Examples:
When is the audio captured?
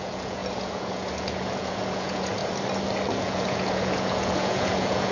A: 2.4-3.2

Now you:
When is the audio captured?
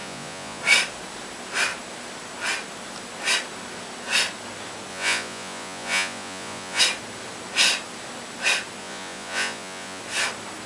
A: 0.6-4.9; 6.8-8.8; 10.0-10.7